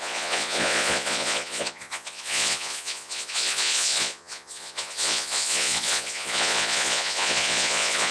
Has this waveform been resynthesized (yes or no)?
yes